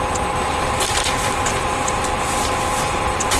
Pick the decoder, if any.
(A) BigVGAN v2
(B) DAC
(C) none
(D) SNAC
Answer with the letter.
A